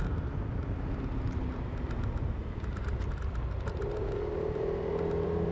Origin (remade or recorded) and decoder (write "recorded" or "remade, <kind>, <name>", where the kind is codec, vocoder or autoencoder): recorded